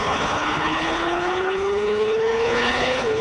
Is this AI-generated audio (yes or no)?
yes